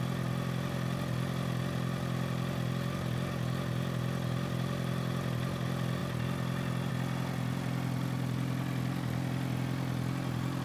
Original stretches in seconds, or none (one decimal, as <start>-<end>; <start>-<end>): 0.0-10.6